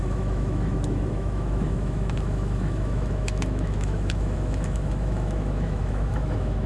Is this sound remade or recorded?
remade